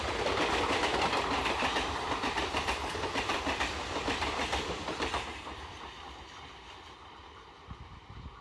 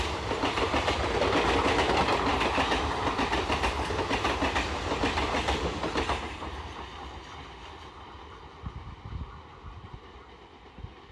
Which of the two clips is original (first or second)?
second